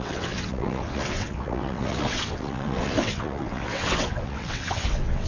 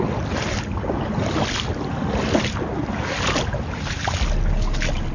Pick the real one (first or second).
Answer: second